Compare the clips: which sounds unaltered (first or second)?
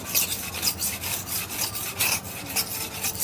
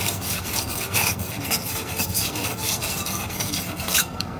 first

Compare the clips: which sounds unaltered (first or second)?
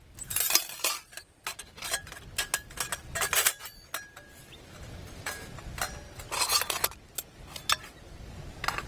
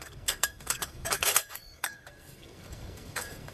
first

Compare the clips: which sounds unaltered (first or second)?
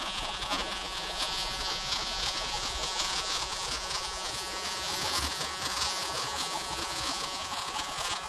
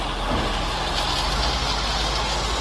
second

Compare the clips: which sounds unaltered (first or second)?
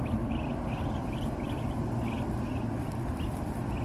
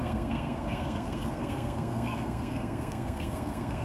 first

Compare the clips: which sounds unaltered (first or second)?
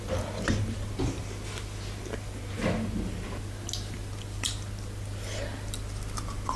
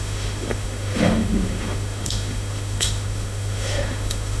first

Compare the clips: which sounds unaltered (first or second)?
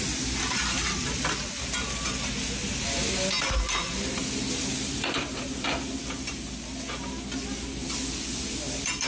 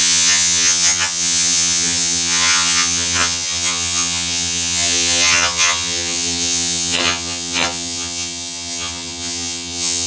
first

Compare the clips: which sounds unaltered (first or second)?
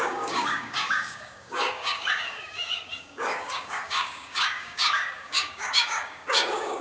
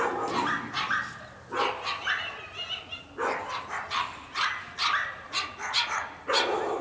second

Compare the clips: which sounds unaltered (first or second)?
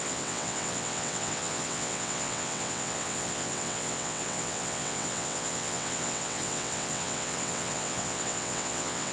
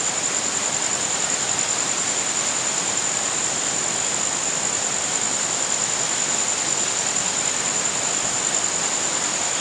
second